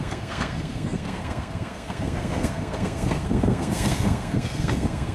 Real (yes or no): no